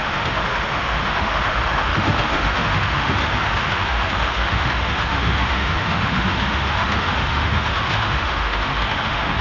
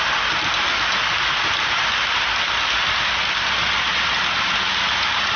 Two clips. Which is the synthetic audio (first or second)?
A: first